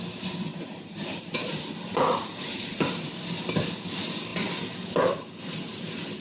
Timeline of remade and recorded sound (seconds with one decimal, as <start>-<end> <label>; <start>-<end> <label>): 0.0-0.5 recorded; 0.5-3.5 remade; 3.5-6.2 recorded